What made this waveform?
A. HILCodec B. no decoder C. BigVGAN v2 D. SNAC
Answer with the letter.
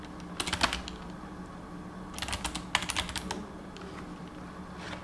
B